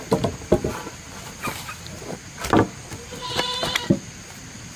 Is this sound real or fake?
real